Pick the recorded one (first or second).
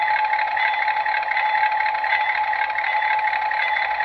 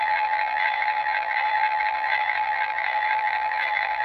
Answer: first